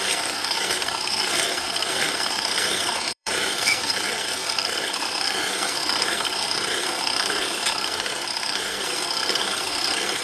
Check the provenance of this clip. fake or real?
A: fake